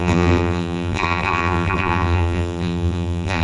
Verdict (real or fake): fake